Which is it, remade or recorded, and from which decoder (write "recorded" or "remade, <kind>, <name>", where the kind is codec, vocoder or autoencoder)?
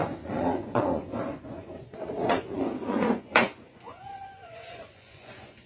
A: remade, vocoder, Vocos